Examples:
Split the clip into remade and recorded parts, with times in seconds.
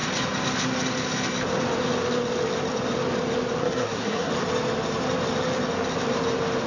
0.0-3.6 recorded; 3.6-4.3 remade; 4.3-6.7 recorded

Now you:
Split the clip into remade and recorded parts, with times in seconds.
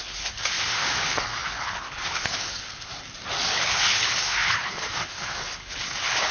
0.0-2.9 remade; 2.9-3.5 recorded; 3.5-6.3 remade